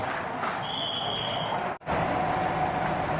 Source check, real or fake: real